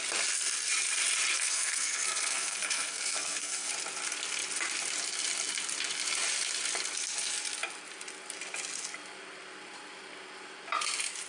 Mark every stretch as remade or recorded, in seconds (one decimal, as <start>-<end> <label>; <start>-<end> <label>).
0.0-1.3 recorded; 1.3-3.7 remade; 3.7-11.3 recorded